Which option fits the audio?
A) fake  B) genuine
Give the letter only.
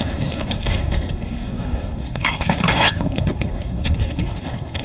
A